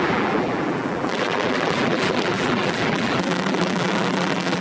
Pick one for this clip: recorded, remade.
remade